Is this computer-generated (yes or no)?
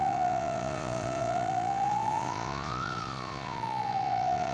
yes